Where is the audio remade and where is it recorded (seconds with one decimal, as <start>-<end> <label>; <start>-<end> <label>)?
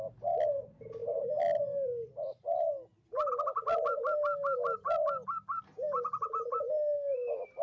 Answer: 0.0-7.6 recorded